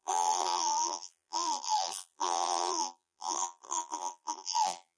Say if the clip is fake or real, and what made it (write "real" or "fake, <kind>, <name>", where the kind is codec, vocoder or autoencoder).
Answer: fake, vocoder, BigVGAN v2